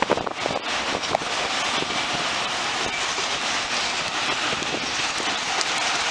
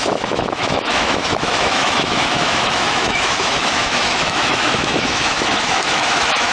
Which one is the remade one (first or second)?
second